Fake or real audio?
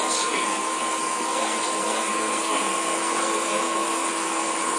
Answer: fake